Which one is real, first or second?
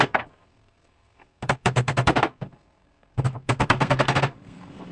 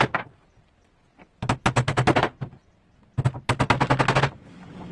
second